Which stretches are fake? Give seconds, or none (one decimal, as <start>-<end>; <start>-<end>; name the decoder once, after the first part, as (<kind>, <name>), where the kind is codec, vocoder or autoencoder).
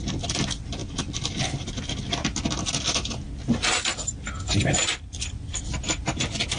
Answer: 0.0-0.8 (vocoder, BigVGAN v2); 4.6-6.6